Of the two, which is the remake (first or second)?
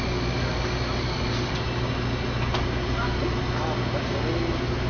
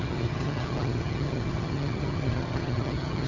second